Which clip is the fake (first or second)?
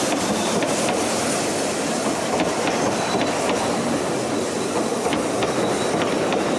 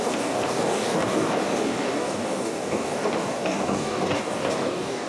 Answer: second